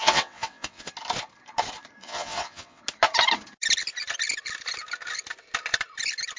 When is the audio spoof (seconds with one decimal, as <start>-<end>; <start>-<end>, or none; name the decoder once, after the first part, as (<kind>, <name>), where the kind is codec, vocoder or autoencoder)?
0.0-0.9 (vocoder, WaveNeXt); 2.0-2.8